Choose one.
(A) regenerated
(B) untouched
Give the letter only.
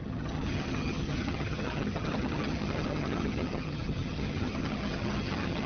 A